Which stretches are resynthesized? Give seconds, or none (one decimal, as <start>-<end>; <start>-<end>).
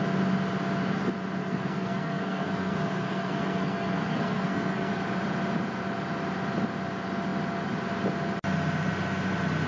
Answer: 1.4-4.9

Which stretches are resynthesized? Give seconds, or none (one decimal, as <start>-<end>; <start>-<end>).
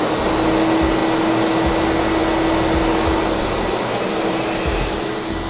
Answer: none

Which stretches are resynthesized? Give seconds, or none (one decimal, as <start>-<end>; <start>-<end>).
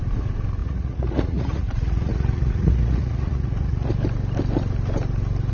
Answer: 0.6-3.9